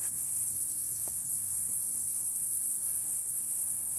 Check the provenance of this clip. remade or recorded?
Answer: remade